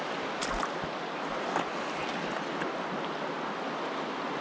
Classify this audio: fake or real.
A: real